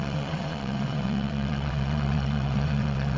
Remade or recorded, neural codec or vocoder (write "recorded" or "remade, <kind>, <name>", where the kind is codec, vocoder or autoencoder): remade, vocoder, WaveNeXt